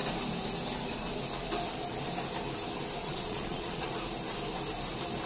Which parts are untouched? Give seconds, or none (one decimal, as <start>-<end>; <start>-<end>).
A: 0.0-3.0; 3.9-5.3